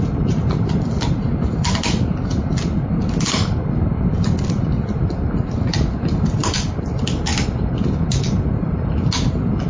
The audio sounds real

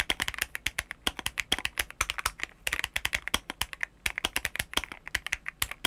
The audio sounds real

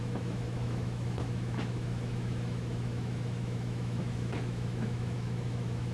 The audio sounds fake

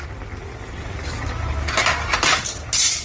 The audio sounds real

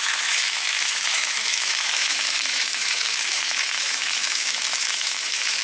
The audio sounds fake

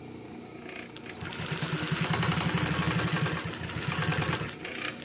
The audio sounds real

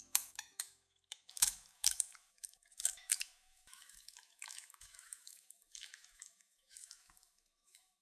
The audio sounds fake